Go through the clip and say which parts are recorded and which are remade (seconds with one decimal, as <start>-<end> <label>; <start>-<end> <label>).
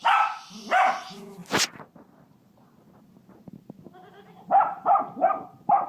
0.0-4.1 recorded; 4.1-5.0 remade; 5.0-5.9 recorded